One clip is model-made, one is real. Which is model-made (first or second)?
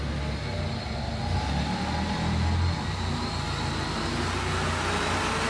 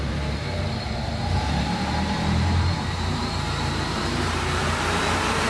second